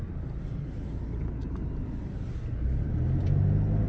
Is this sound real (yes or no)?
yes